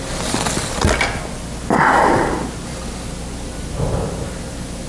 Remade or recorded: recorded